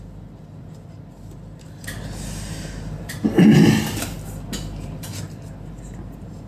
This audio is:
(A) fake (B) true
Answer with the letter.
B